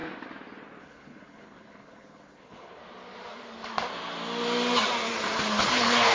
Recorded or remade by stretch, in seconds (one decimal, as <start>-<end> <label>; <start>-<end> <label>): 0.0-0.8 recorded; 0.8-2.8 remade; 2.8-5.6 recorded; 5.6-6.1 remade